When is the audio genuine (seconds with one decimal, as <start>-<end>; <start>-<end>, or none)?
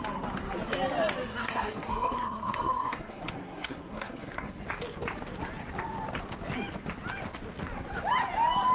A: 0.0-1.3; 4.6-8.7